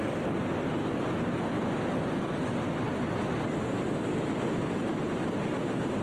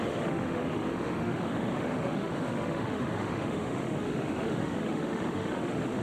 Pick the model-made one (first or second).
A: second